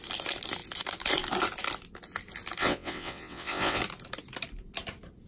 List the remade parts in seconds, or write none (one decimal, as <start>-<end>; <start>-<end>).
2.6-3.8